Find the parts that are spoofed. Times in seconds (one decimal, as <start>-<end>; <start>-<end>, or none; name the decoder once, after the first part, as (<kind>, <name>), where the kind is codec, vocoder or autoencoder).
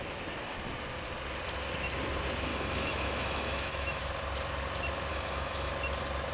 2.5-4.0 (autoencoder, DAC-VAE); 5.1-5.7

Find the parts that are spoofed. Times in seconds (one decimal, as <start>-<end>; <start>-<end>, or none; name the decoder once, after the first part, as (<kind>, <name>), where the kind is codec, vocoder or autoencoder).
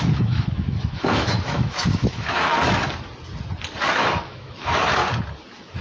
0.0-2.5 (autoencoder, DAC-VAE); 3.9-5.0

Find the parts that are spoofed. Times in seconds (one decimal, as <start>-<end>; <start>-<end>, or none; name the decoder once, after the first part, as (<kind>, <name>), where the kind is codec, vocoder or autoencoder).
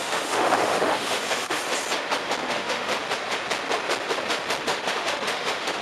0.0-1.6 (autoencoder, DAC-VAE); 2.4-2.9; 4.6-5.8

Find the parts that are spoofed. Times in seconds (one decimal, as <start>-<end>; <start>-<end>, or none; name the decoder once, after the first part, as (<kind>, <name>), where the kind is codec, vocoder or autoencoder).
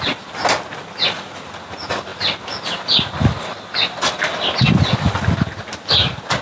none